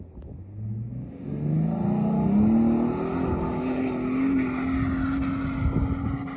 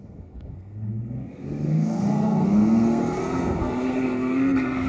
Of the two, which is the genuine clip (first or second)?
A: first